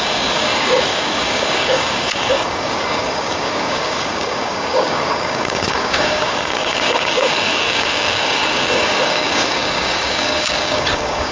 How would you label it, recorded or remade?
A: remade